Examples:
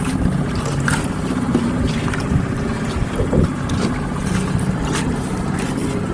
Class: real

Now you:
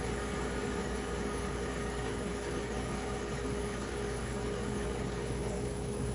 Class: fake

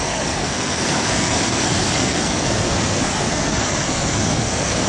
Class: fake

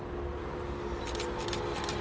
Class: real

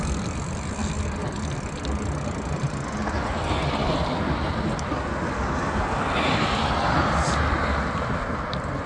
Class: real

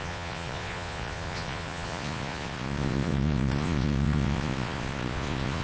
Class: fake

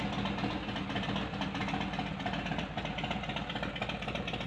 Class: real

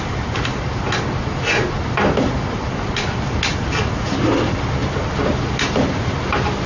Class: real